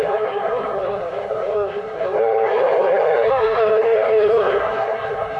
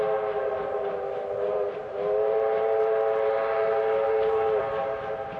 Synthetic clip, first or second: first